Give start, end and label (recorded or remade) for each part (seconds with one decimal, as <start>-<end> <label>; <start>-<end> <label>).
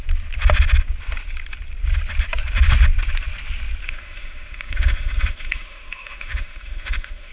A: 0.0-3.8 recorded; 3.8-7.3 remade